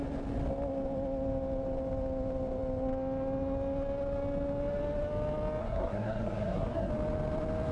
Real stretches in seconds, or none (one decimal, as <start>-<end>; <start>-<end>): 0.0-5.6; 6.9-7.7